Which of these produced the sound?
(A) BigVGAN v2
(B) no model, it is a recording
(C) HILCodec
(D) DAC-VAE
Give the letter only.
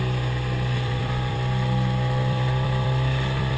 A